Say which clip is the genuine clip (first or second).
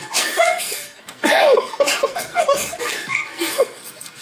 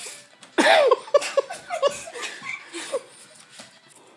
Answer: second